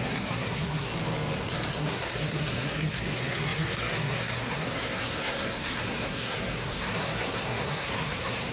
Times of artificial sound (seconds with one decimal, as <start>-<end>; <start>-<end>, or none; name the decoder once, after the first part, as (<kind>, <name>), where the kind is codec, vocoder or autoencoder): 0.0-0.9 (codec, SNAC); 1.7-8.5